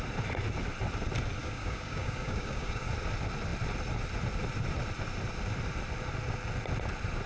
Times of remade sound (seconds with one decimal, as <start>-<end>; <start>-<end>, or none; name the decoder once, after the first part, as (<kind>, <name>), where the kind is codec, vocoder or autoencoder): 1.4-2.9 (codec, DAC)